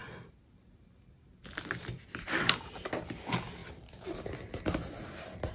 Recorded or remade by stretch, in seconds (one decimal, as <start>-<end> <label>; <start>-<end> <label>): 0.0-3.6 recorded; 3.6-5.5 remade